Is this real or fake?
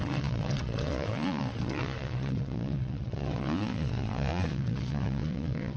fake